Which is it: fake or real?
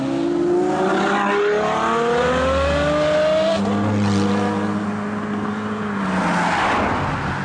real